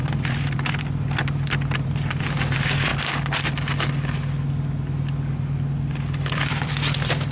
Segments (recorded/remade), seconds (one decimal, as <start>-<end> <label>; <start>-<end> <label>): 0.0-2.9 remade; 2.9-6.3 recorded; 6.3-7.3 remade